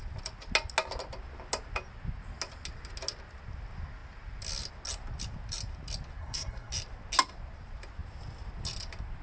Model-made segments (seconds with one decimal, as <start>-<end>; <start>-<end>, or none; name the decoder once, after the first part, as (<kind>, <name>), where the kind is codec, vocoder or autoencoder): 6.2-6.7 (codec, SNAC)